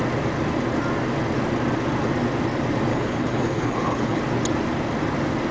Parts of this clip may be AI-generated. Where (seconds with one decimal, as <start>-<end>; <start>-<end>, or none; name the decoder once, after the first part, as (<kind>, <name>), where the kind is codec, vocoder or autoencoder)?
2.9-4.2 (codec, HILCodec)